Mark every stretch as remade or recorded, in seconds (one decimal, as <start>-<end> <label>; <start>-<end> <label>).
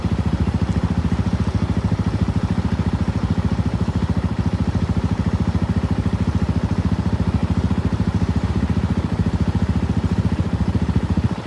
0.0-11.5 recorded